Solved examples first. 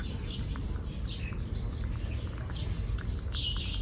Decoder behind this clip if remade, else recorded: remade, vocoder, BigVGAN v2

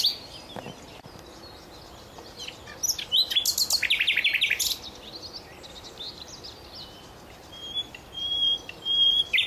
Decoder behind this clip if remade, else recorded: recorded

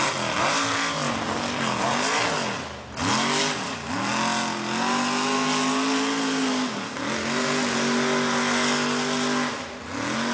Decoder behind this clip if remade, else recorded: recorded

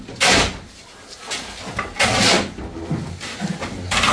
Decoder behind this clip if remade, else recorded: recorded